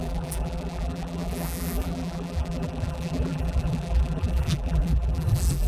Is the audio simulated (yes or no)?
yes